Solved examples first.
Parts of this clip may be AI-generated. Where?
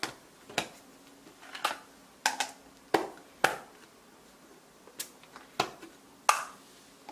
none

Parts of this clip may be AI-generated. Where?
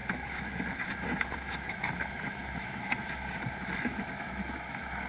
0.0-5.1 (autoencoder, DAC-VAE)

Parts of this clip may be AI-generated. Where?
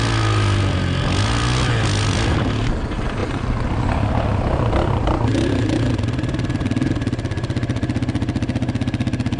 none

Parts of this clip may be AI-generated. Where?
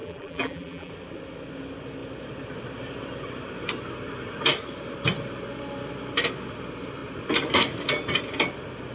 0.0-0.9 (vocoder, BigVGAN v2)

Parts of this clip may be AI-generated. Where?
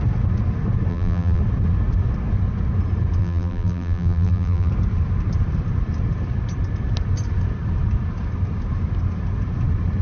0.9-1.4 (vocoder, BigVGAN v2); 3.2-4.7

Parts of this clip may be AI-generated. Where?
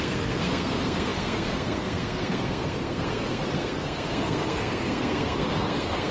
0.0-6.1 (codec, SNAC)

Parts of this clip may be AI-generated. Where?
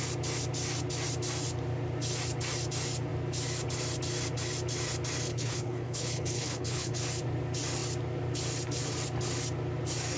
5.3-7.0 (codec, HILCodec)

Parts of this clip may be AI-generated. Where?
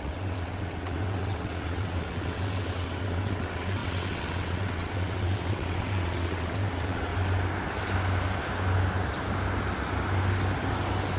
0.0-7.1 (vocoder, WaveNeXt)